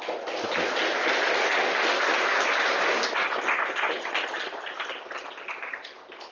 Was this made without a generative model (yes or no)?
yes